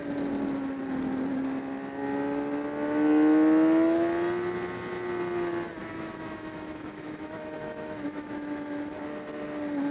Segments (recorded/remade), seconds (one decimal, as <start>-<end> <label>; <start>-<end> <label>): 0.0-5.8 recorded; 5.8-8.9 remade; 8.9-9.9 recorded